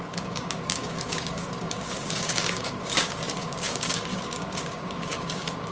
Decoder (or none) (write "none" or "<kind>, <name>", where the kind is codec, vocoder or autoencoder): codec, DAC